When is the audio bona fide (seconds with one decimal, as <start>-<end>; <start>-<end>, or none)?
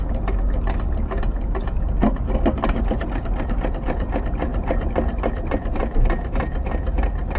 0.0-7.4